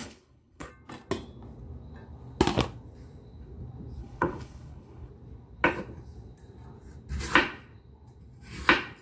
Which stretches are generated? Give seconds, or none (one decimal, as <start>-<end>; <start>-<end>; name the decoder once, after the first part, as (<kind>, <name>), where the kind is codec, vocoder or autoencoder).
0.0-0.7 (codec, HILCodec); 4.0-5.1